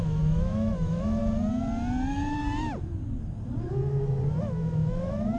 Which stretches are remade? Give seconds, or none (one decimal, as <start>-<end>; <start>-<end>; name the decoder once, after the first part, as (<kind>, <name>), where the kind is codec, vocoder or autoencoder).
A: 0.0-1.2 (autoencoder, DAC-VAE); 4.4-5.4

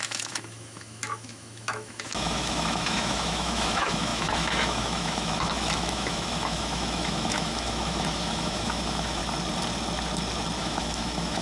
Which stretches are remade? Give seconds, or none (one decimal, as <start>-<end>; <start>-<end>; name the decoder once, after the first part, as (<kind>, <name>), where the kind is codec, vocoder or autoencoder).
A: 0.0-9.2 (autoencoder, DAC-VAE); 10.6-11.4

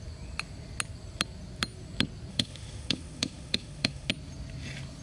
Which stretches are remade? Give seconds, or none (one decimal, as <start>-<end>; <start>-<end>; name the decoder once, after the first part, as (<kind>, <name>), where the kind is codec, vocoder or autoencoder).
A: 2.3-4.1 (autoencoder, DAC-VAE)

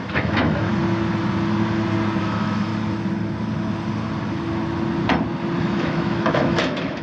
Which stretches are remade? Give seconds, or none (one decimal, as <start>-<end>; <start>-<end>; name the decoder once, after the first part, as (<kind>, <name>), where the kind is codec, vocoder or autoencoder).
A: 0.0-0.7 (autoencoder, DAC-VAE); 2.2-2.7; 5.6-7.0

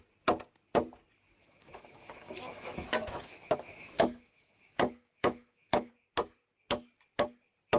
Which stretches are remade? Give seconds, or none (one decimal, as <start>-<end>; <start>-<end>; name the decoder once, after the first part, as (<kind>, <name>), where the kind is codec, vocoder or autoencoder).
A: 1.4-5.9 (autoencoder, DAC-VAE)

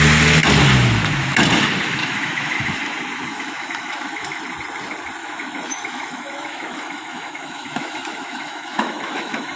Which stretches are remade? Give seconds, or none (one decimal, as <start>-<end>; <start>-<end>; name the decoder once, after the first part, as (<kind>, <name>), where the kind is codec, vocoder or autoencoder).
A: 2.0-2.8 (autoencoder, DAC-VAE); 3.3-4.4; 5.2-9.6